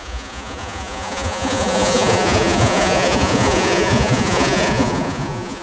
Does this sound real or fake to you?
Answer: fake